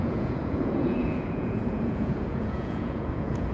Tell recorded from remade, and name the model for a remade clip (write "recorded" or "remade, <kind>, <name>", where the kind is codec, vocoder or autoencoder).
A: remade, vocoder, Vocos